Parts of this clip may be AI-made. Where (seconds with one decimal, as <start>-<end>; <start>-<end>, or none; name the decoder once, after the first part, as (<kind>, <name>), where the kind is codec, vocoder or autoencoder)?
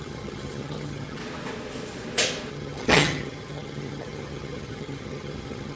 0.0-1.2 (vocoder, HiFi-GAN); 2.5-5.8